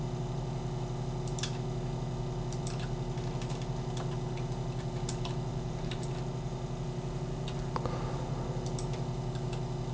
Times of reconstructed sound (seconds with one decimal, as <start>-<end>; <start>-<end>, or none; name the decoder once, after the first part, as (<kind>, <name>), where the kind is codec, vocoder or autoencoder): 5.5-6.1 (vocoder, BigVGAN v2)